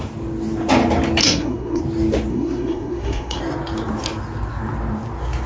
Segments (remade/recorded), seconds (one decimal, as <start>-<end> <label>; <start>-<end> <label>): 0.0-1.2 recorded; 1.2-1.8 remade; 1.8-2.3 recorded; 2.3-3.4 remade; 3.4-5.5 recorded